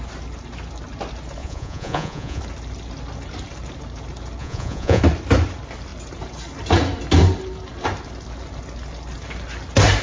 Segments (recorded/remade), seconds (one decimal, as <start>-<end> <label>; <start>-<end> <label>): 0.0-1.4 recorded; 1.4-2.4 remade; 2.4-4.4 recorded; 4.4-5.0 remade; 5.0-10.0 recorded